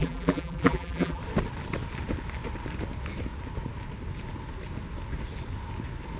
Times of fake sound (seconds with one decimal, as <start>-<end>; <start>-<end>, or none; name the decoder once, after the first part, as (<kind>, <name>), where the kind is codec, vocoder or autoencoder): 0.0-1.2 (vocoder, BigVGAN v2)